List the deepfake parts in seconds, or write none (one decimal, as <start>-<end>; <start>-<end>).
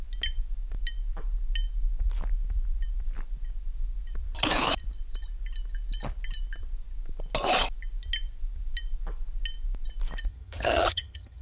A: 10.3-11.4